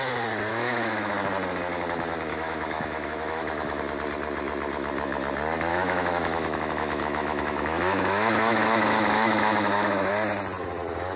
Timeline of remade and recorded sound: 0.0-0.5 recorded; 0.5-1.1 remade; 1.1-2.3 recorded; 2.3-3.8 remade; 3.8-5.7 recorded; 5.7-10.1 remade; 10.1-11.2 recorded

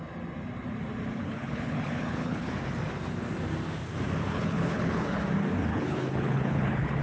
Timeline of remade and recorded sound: 0.0-1.2 recorded; 1.2-2.5 remade; 2.5-4.3 recorded; 4.3-5.2 remade; 5.2-5.7 recorded; 5.7-7.0 remade

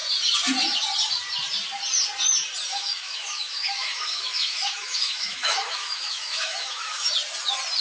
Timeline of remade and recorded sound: 0.0-2.7 recorded; 2.7-7.1 remade; 7.1-7.8 recorded

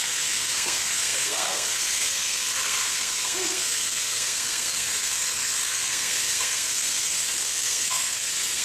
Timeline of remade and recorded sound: 0.0-8.6 remade

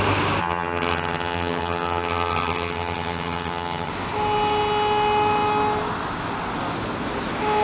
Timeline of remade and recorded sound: 0.0-0.4 recorded; 0.4-3.9 remade; 3.9-7.6 recorded

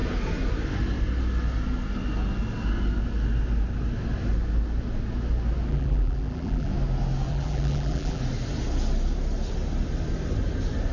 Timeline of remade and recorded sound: 0.0-5.7 recorded; 5.7-6.7 remade; 6.7-7.3 recorded; 7.3-8.2 remade; 8.2-10.9 recorded

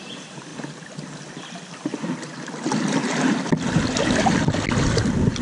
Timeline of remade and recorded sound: 0.0-5.4 recorded